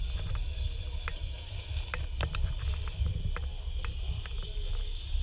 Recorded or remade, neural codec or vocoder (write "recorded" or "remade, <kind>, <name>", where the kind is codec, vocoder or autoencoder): recorded